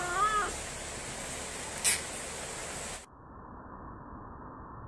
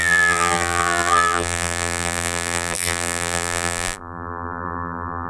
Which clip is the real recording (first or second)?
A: first